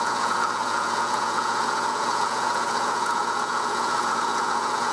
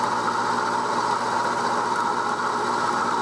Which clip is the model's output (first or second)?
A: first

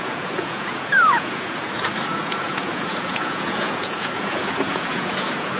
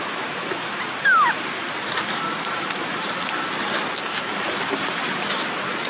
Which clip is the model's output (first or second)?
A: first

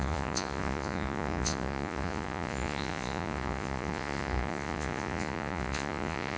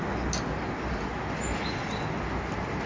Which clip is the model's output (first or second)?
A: first